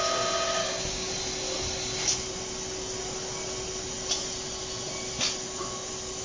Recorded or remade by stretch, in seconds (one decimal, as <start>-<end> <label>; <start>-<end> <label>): 0.0-0.6 recorded; 0.6-1.1 remade; 1.1-6.2 recorded